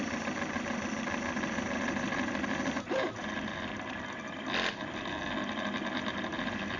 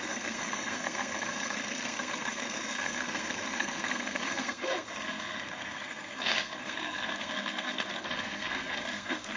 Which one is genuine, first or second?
first